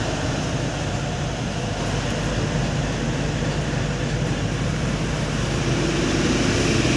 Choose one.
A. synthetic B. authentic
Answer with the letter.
B